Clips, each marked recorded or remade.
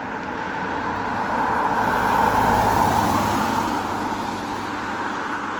recorded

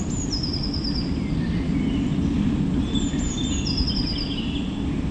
recorded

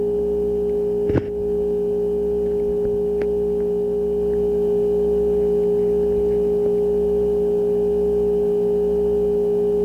recorded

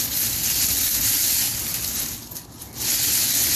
recorded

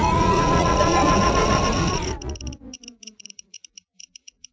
remade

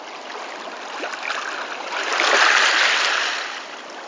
recorded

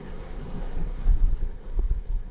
remade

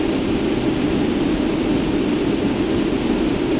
recorded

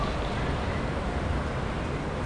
recorded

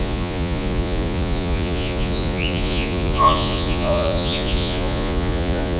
remade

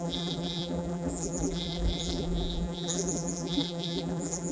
remade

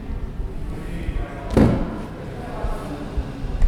recorded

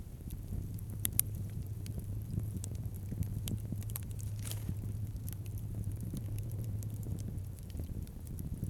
remade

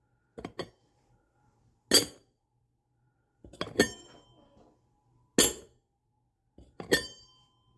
recorded